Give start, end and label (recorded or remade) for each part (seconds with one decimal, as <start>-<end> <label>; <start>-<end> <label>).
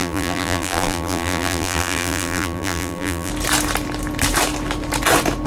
0.0-3.3 remade; 3.3-5.5 recorded